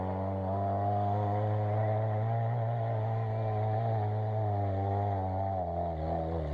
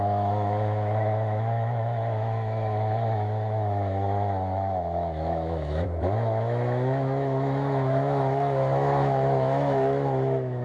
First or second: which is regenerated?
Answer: second